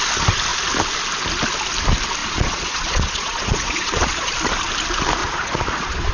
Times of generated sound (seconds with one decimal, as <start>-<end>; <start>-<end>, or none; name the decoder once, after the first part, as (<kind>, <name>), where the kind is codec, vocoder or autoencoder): 2.2-4.3 (vocoder, Vocos); 5.2-6.1